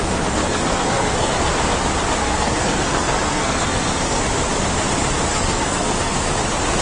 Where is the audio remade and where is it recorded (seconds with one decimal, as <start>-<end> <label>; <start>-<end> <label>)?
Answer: 0.0-0.4 recorded; 0.4-1.5 remade; 1.5-2.2 recorded; 2.2-4.2 remade; 4.2-5.3 recorded; 5.3-6.3 remade; 6.3-6.8 recorded